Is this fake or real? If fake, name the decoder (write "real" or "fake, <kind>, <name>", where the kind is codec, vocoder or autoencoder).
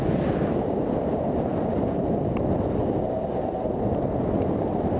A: real